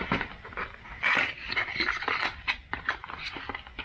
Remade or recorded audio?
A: recorded